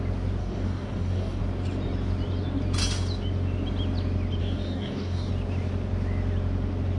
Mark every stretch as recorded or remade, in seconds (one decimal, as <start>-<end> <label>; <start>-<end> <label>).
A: 0.0-0.4 recorded; 0.4-1.4 remade; 1.4-4.4 recorded; 4.4-5.3 remade; 5.3-7.0 recorded